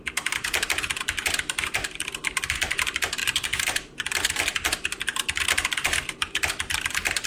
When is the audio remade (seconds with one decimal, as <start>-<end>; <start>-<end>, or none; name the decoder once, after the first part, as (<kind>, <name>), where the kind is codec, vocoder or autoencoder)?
0.0-7.3 (vocoder, BigVGAN v2)